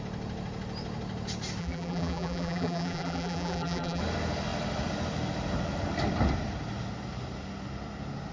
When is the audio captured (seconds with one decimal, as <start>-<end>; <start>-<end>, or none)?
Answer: 0.0-1.6; 4.0-8.3